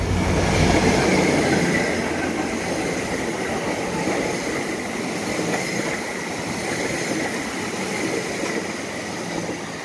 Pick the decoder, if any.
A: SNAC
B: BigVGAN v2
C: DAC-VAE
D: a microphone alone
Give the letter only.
D